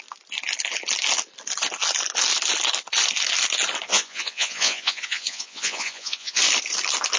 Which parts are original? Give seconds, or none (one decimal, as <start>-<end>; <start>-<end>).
0.0-3.9; 6.4-7.2